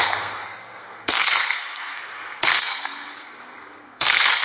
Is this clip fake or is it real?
fake